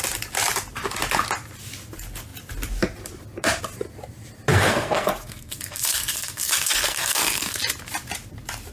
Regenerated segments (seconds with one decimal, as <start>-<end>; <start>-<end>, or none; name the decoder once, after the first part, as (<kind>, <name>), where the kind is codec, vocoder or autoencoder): 4.5-7.6 (codec, SNAC)